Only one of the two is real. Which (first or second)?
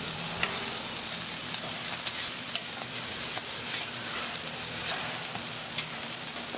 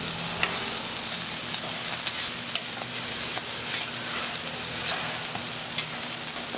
second